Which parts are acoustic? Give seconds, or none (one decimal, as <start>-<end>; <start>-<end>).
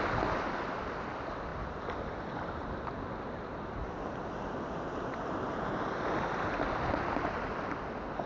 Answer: 0.0-8.3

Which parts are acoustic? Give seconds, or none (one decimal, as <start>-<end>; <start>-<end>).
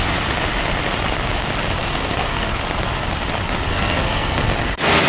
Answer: 0.0-1.8; 2.6-3.7